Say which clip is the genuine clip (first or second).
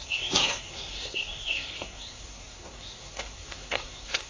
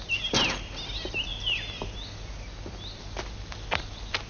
second